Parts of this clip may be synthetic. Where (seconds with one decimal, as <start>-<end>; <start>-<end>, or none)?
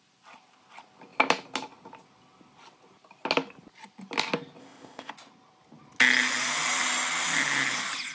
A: 4.6-5.1